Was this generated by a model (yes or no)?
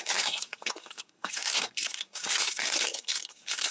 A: yes